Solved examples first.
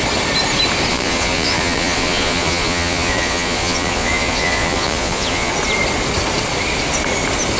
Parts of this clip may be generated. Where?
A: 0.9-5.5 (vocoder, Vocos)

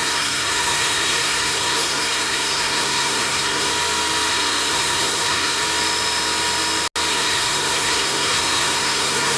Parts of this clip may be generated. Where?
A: 0.0-3.7 (codec, SNAC); 4.3-5.6; 7.1-9.4

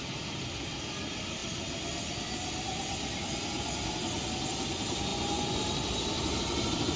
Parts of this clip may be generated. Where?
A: 5.1-5.6 (vocoder, Vocos)

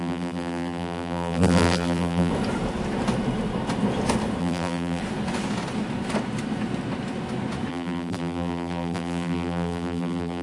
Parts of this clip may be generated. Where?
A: 0.0-2.3 (vocoder, BigVGAN v2); 4.4-5.0; 7.7-10.4

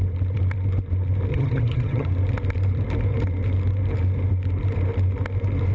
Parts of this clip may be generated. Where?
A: 1.3-2.1 (vocoder, HiFi-GAN)

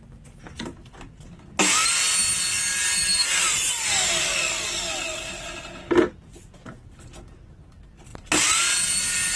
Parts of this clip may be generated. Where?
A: none